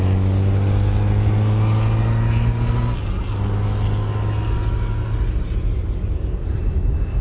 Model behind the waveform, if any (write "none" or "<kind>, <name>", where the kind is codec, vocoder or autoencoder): none